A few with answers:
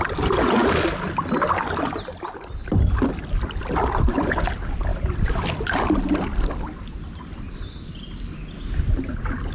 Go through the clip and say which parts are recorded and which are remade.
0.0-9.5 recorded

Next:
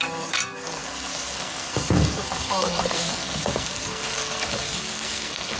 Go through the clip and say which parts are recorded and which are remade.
0.0-5.6 remade

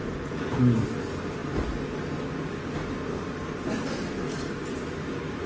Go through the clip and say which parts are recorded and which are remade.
0.0-0.6 remade; 0.6-5.5 recorded

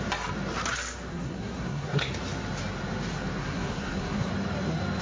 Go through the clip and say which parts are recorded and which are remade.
0.0-1.1 recorded; 1.1-2.0 remade; 2.0-3.4 recorded; 3.4-4.3 remade; 4.3-5.0 recorded

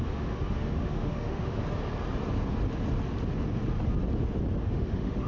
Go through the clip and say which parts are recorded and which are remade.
0.0-1.6 remade; 1.6-4.6 recorded; 4.6-5.3 remade

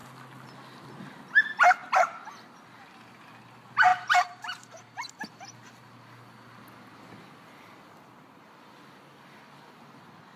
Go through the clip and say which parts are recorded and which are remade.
0.0-3.9 recorded; 3.9-5.2 remade; 5.2-10.4 recorded

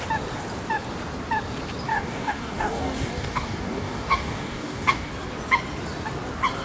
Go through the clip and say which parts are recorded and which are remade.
0.0-1.9 recorded; 1.9-5.1 remade; 5.1-6.6 recorded